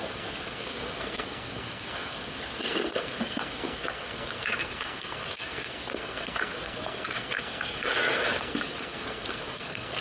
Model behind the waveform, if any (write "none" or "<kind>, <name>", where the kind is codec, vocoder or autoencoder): codec, SNAC